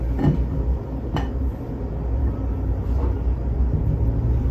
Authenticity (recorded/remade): recorded